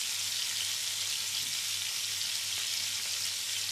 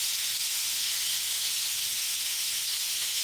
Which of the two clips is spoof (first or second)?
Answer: second